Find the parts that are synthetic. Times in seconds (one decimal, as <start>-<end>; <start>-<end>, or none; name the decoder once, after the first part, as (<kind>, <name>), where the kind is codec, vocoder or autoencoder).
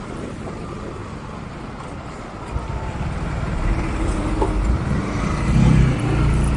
0.0-1.0 (vocoder, BigVGAN v2); 5.0-6.6